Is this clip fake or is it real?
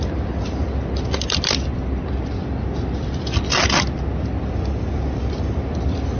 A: real